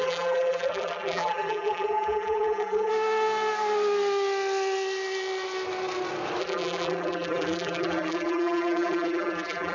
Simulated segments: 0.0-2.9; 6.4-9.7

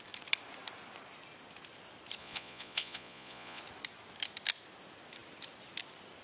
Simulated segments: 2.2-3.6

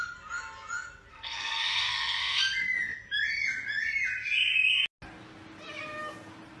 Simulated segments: 1.1-2.4

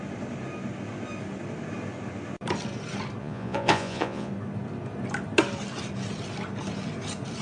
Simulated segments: 3.2-4.3